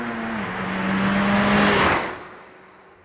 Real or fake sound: real